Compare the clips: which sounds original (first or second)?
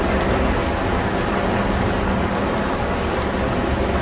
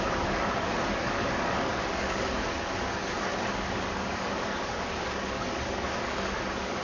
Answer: first